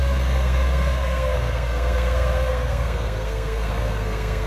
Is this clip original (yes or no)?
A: no